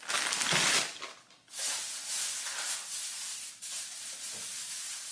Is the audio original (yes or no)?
yes